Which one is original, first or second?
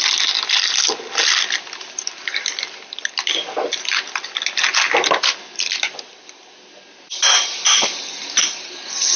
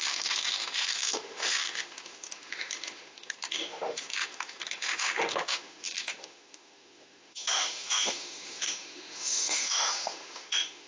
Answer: first